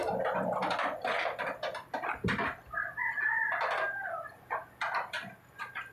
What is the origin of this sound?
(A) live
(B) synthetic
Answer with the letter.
A